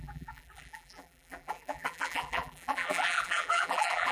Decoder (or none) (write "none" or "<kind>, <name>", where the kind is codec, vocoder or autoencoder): vocoder, BigVGAN v2